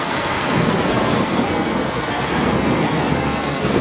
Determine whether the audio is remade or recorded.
remade